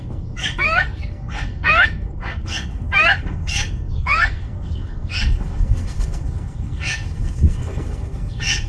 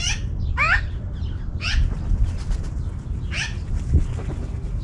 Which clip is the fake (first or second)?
first